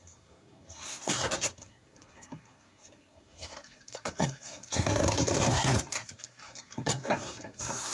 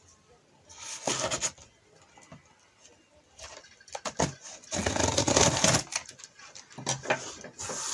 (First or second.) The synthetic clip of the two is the first